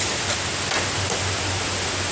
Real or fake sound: real